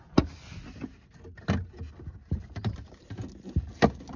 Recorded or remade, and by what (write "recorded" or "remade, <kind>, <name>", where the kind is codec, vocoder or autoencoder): recorded